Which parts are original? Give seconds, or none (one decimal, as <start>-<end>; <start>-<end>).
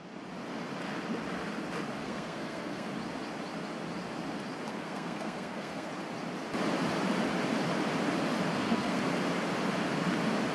0.0-2.0; 2.9-4.7; 5.9-8.5; 9.0-10.5